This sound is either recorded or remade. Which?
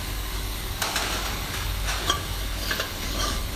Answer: remade